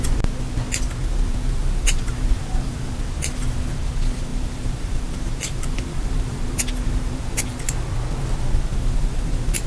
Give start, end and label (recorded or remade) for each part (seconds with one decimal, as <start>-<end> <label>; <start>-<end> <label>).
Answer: 0.0-1.0 recorded; 1.0-3.0 remade; 3.0-4.3 recorded; 4.3-7.6 remade; 7.6-8.7 recorded; 8.7-9.7 remade